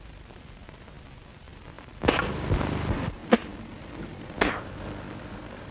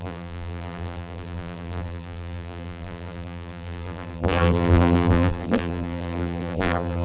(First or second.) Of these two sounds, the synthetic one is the second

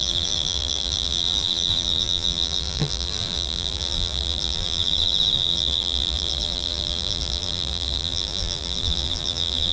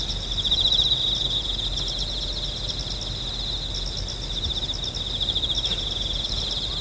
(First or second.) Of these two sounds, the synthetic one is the first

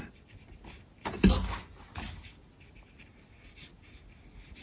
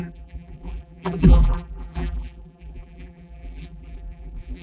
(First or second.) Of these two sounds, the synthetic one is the second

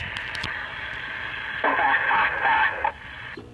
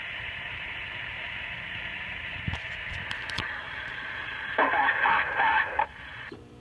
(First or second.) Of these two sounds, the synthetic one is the second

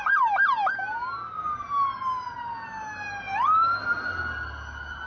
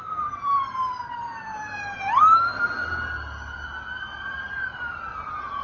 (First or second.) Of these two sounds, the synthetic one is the second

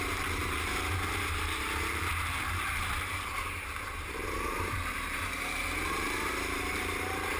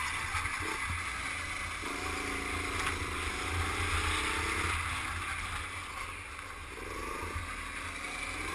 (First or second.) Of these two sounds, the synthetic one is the first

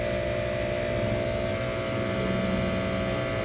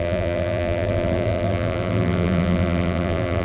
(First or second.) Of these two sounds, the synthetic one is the second